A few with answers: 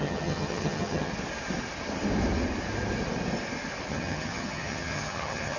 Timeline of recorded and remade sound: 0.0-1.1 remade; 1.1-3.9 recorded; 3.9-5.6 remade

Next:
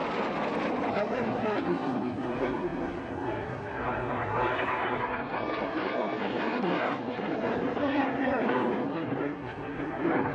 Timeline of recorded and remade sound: 0.0-0.9 recorded; 0.9-10.3 remade

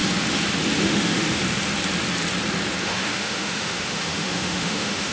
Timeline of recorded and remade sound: 0.0-0.8 recorded; 0.8-1.4 remade; 1.4-2.8 recorded; 2.8-5.1 remade

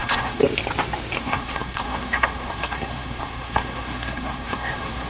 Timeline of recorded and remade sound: 0.0-0.4 remade; 0.4-1.2 recorded; 1.2-5.1 remade

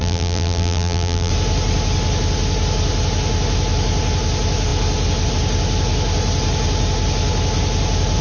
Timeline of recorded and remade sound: 0.0-1.3 remade; 1.3-8.2 recorded

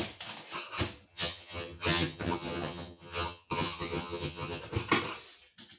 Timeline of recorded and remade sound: 0.0-1.1 recorded; 1.1-4.6 remade; 4.6-5.8 recorded